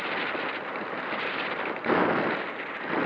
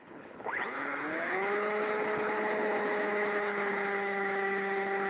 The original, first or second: first